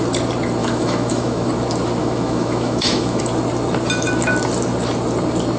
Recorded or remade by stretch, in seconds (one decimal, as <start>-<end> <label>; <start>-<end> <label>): 0.0-0.6 recorded; 0.6-1.5 remade; 1.5-2.0 recorded; 2.0-3.2 remade; 3.2-5.6 recorded